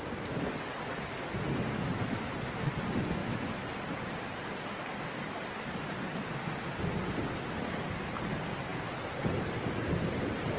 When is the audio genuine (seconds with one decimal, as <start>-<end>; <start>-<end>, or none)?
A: 0.0-10.6